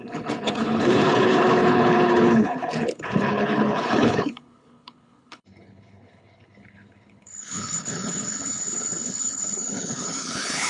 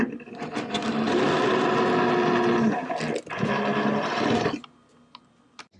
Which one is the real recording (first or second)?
second